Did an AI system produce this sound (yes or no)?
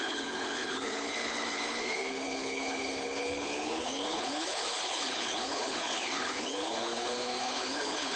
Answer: yes